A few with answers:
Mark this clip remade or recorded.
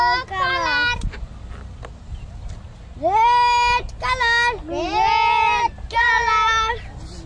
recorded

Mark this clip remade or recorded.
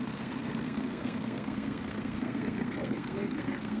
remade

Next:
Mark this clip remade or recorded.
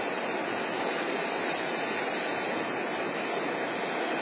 recorded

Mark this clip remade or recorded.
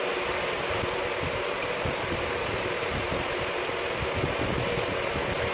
recorded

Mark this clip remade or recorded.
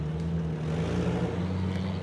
recorded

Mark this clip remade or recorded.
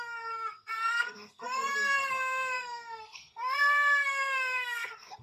remade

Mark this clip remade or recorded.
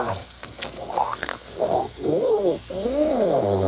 remade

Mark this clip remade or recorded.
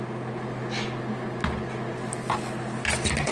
recorded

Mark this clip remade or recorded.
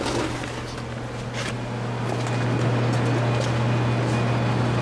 recorded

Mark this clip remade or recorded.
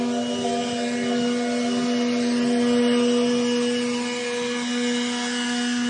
recorded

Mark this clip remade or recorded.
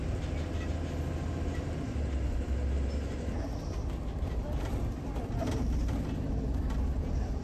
recorded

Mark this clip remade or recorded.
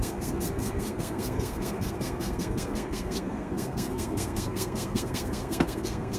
remade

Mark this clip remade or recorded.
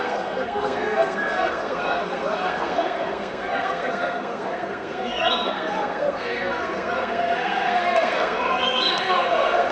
remade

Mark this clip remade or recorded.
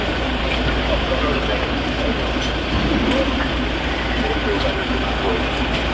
recorded